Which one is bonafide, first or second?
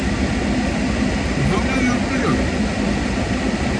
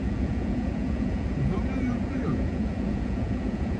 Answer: first